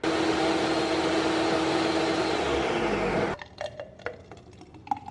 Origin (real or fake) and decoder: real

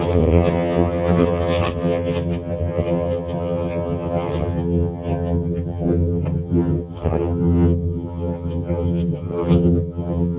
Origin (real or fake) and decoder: fake, vocoder, HiFi-GAN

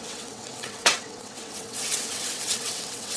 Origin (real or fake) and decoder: fake, vocoder, WaveNeXt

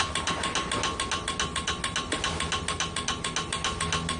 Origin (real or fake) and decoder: real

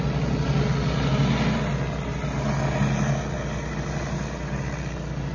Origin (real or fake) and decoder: real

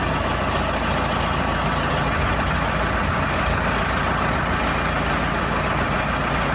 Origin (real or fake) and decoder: real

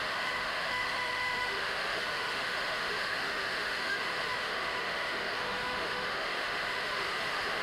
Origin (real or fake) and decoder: fake, autoencoder, DAC-VAE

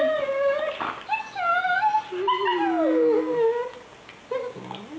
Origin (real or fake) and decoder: real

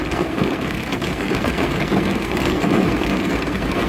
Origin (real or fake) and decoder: fake, codec, SNAC